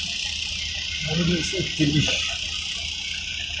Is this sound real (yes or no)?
yes